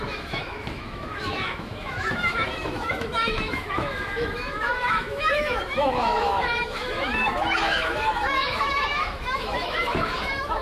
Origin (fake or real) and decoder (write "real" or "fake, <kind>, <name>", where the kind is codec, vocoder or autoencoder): fake, autoencoder, DAC-VAE